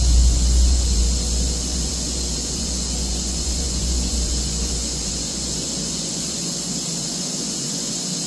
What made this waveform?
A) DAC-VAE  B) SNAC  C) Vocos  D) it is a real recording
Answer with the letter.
C